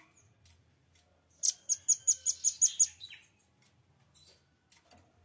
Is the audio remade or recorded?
recorded